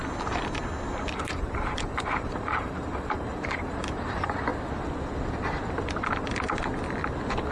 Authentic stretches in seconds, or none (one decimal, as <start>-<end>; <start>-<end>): 0.0-1.2; 4.5-7.5